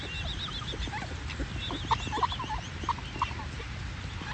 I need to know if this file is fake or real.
real